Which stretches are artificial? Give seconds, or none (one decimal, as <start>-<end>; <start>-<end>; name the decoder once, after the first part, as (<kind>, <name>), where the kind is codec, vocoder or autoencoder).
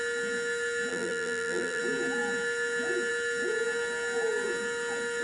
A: 0.9-1.8 (vocoder, BigVGAN v2)